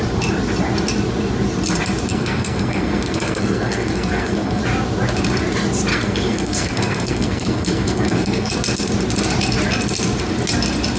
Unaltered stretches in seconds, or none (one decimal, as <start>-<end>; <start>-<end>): 0.0-2.1; 4.6-5.9; 8.5-11.0